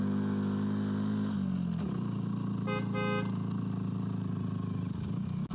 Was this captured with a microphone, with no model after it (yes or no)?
yes